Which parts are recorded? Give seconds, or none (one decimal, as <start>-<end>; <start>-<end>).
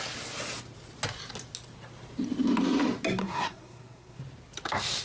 0.0-3.2; 4.2-5.0